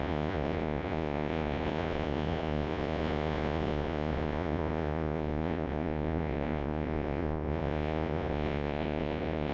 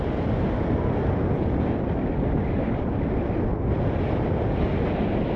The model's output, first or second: first